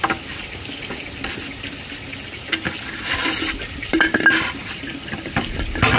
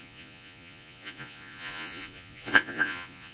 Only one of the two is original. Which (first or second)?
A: first